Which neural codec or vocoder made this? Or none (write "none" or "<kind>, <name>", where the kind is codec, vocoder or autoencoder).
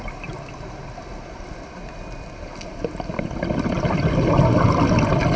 none